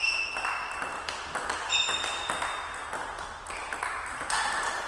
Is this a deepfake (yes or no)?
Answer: no